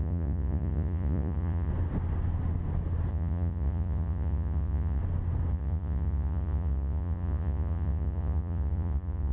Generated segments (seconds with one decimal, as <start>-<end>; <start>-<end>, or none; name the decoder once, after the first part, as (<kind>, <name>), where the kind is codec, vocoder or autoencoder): 0.0-1.7 (vocoder, Vocos); 3.1-5.0; 5.5-9.3